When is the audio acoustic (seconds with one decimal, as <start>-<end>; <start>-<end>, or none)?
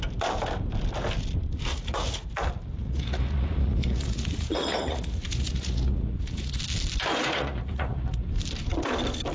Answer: 0.0-1.7; 2.3-2.8; 6.6-7.1; 8.3-9.3